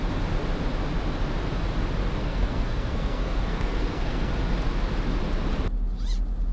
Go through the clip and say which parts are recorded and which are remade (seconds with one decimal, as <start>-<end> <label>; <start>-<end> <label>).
0.0-2.2 recorded; 2.2-4.3 remade; 4.3-6.5 recorded